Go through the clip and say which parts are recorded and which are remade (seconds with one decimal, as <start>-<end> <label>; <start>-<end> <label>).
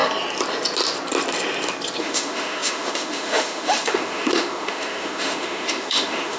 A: 0.0-2.0 recorded; 2.0-6.4 remade